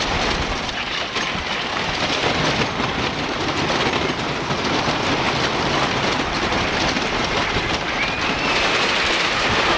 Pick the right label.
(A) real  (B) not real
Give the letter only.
A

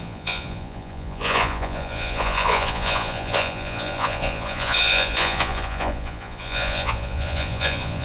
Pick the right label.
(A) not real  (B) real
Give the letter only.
A